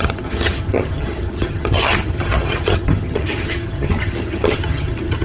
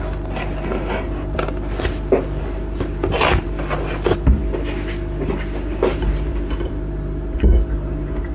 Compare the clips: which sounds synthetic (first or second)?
first